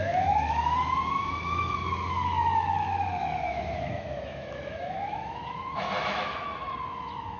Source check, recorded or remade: remade